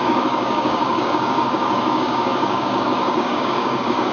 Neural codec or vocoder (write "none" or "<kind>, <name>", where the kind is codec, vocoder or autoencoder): codec, DAC